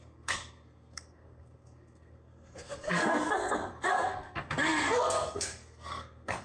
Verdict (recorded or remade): remade